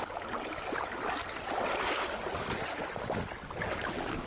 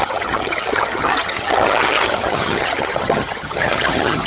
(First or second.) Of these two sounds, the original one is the first